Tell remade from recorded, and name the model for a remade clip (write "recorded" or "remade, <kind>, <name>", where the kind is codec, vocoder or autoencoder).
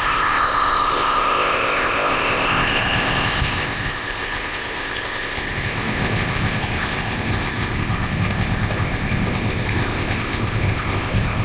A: remade, codec, ZipCodec